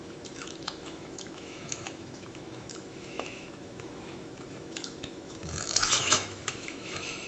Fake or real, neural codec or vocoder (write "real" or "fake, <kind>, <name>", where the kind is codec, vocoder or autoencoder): fake, autoencoder, DAC-VAE